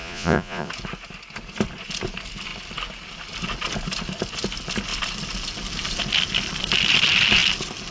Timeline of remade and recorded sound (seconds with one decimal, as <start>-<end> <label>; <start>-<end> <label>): 0.0-0.7 remade; 0.7-7.9 recorded